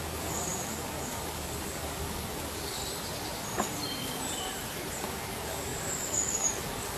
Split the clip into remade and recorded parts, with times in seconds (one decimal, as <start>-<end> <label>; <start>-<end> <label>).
0.0-2.8 remade; 2.8-5.0 recorded; 5.0-7.0 remade